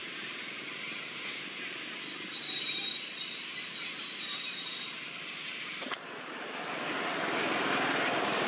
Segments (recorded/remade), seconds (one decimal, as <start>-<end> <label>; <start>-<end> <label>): 0.0-2.9 remade; 2.9-8.5 recorded

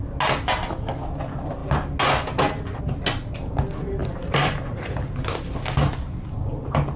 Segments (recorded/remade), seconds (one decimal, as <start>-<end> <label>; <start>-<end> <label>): 0.0-4.0 recorded; 4.0-5.0 remade; 5.0-7.0 recorded

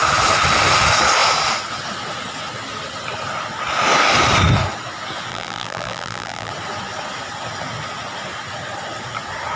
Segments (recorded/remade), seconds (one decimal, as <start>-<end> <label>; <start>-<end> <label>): 0.0-5.3 recorded; 5.3-6.5 remade; 6.5-9.6 recorded

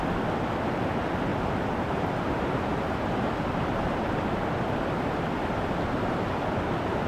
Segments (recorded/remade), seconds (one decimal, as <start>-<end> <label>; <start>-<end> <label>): 0.0-1.3 recorded; 1.3-4.2 remade; 4.2-7.1 recorded

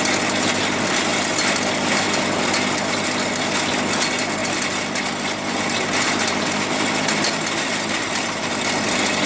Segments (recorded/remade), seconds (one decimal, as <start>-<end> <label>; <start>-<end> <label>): 0.0-1.1 recorded; 1.1-2.2 remade; 2.2-9.3 recorded